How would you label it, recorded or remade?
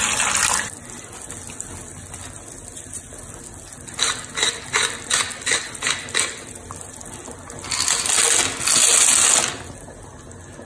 recorded